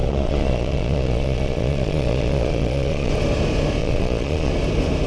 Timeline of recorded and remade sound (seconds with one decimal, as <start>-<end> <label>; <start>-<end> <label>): 0.0-3.1 remade; 3.1-3.8 recorded; 3.8-4.5 remade; 4.5-5.1 recorded